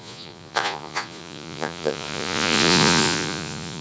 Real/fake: fake